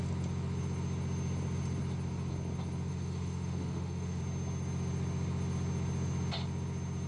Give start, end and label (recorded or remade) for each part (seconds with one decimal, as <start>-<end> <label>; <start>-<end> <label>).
0.0-2.9 recorded; 2.9-4.2 remade; 4.2-7.1 recorded